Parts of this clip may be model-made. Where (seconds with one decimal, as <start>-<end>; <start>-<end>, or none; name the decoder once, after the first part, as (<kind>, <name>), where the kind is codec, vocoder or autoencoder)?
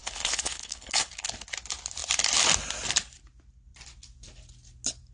0.0-1.1 (codec, HILCodec)